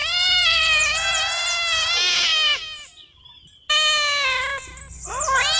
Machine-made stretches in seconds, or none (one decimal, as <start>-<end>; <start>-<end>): 0.0-0.6